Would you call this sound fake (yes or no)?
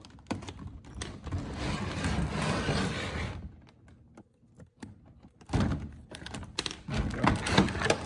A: no